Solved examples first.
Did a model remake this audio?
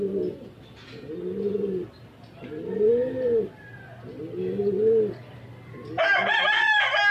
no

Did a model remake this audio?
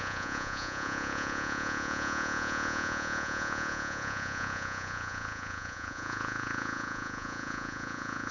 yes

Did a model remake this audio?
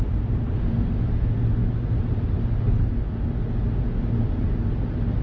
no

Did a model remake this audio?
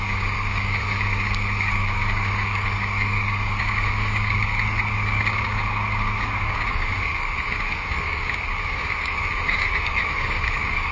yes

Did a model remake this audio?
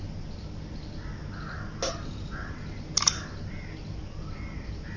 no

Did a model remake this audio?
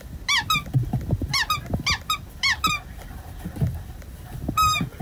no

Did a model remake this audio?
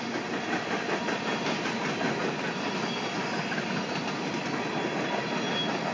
no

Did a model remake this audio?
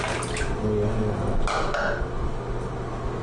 no